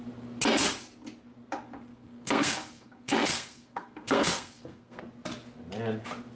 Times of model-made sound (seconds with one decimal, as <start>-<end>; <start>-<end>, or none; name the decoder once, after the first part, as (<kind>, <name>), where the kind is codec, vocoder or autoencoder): 1.9-5.0 (codec, SNAC)